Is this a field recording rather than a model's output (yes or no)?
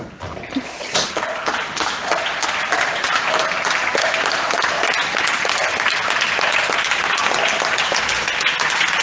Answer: yes